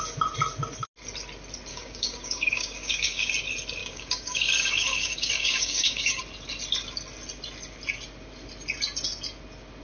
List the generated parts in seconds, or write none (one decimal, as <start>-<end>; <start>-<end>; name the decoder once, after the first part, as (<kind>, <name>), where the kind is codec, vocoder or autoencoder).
1.7-3.3 (codec, DAC); 3.8-6.2